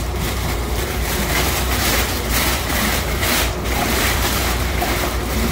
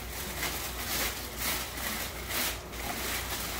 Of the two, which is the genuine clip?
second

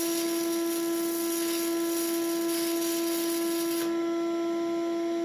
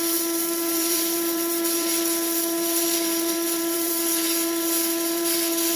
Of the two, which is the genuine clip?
first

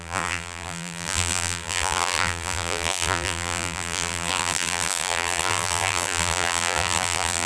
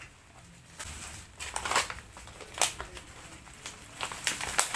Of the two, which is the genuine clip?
second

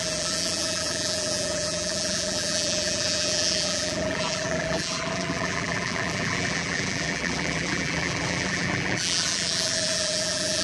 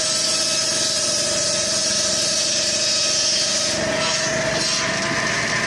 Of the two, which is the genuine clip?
second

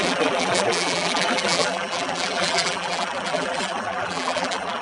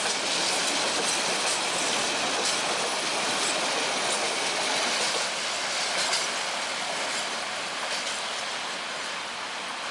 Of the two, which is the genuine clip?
second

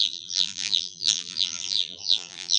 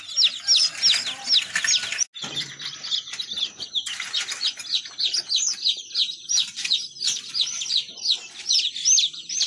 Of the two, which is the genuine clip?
second